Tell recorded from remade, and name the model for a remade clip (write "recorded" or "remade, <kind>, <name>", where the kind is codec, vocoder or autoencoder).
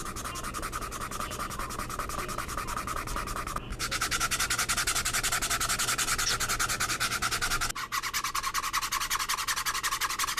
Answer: recorded